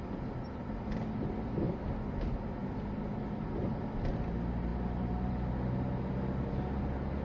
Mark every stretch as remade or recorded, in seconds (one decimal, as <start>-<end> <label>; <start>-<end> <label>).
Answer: 0.0-7.2 recorded